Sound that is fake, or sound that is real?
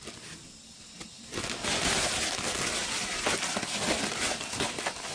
real